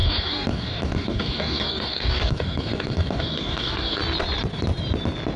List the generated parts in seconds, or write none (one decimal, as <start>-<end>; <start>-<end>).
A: 0.0-4.0

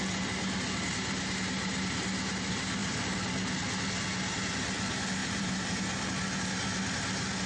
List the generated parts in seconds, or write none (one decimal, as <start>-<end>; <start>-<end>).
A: 5.2-5.8

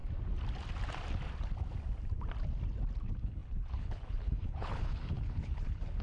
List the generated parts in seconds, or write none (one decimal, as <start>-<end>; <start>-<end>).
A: 3.0-6.0

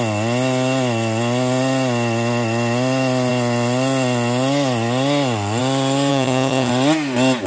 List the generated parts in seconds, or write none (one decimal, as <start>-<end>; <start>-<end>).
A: 6.1-6.7

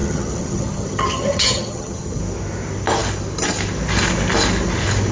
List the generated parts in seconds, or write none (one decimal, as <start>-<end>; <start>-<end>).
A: 0.0-2.2

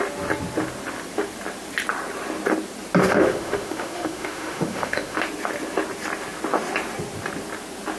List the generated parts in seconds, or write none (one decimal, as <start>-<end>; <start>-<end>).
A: 3.0-5.2

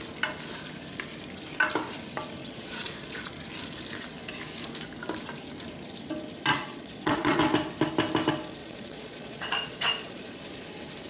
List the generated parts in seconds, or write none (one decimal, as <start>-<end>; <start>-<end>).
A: 2.4-3.3; 6.5-7.4; 8.6-10.4